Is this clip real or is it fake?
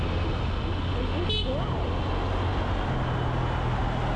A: real